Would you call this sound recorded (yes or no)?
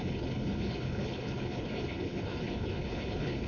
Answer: no